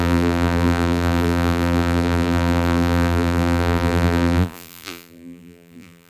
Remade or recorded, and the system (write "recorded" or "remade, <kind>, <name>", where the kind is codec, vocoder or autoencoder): remade, vocoder, BigVGAN v2